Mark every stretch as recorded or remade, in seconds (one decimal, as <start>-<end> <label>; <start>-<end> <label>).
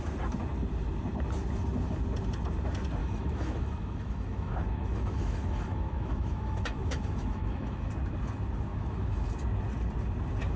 0.0-3.0 recorded; 3.0-7.9 remade; 7.9-8.7 recorded; 8.7-9.3 remade; 9.3-10.6 recorded